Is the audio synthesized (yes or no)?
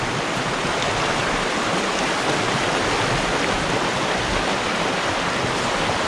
no